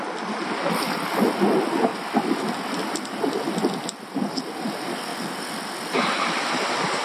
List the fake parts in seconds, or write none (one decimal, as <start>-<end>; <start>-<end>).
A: none